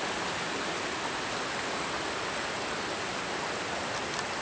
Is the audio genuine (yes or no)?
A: yes